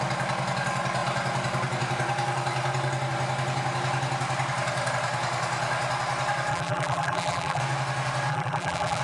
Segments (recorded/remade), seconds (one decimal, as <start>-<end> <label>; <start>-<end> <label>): 0.0-6.5 recorded; 6.5-7.6 remade; 7.6-8.3 recorded; 8.3-9.0 remade